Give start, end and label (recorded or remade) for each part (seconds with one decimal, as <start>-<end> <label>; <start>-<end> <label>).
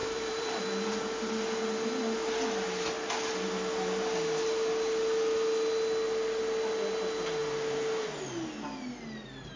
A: 0.0-0.6 remade; 0.6-9.6 recorded